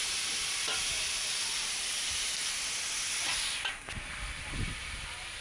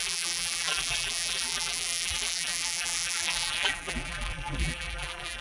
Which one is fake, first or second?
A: second